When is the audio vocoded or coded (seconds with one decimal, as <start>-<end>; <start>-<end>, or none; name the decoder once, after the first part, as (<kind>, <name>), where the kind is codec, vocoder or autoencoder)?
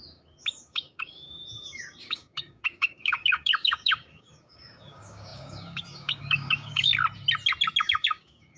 0.0-6.9 (codec, DAC); 7.8-8.6